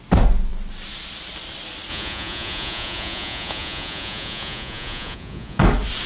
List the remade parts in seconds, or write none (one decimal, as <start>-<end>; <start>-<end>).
1.9-5.6